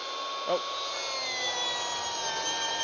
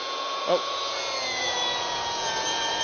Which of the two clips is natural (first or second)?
first